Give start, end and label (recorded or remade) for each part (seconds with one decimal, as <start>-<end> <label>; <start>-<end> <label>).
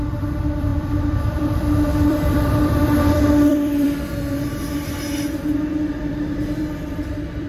0.0-7.5 remade